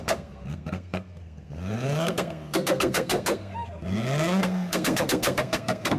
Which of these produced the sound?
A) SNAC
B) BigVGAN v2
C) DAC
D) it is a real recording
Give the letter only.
A